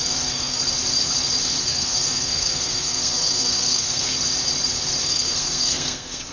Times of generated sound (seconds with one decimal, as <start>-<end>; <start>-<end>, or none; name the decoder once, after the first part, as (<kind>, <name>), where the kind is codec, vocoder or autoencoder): 0.0-0.6 (codec, SNAC); 1.6-4.1; 5.0-6.3